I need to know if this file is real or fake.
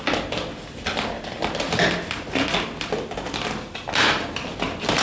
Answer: real